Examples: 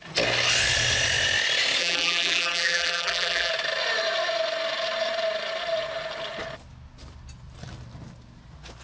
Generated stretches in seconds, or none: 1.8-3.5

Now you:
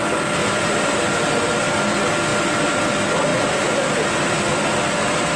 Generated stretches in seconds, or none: 0.4-1.8